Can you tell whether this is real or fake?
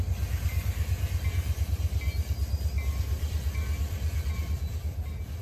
fake